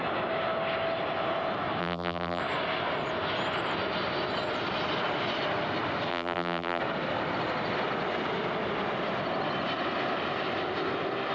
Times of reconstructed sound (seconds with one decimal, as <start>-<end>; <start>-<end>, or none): 1.8-2.4; 6.1-6.8